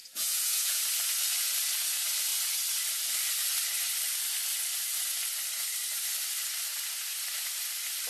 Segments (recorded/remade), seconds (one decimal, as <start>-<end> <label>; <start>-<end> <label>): 0.0-0.8 remade; 0.8-8.1 recorded

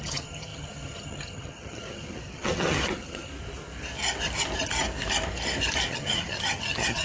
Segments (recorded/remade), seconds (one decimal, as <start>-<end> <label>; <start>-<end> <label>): 0.0-3.3 remade; 3.3-5.9 recorded; 5.9-7.0 remade

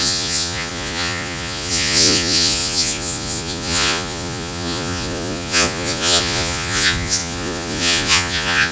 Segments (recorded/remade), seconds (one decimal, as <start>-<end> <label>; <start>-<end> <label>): 0.0-8.7 remade

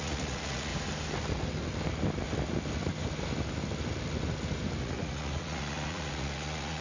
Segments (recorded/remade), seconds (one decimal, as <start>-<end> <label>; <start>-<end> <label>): 0.0-0.7 remade; 0.7-4.8 recorded; 4.8-6.8 remade